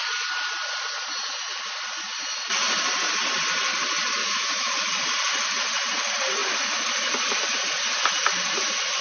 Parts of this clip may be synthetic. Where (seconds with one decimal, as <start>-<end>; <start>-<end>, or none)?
4.2-4.7